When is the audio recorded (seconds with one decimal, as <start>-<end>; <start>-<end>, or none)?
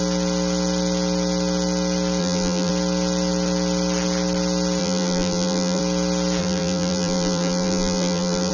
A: 0.0-2.2; 2.7-4.8; 5.8-6.4